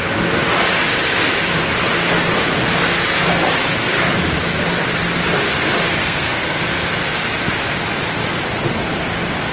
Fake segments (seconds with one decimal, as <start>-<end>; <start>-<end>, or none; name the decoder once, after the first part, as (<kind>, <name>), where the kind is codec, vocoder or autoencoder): 6.0-6.6 (codec, SNAC)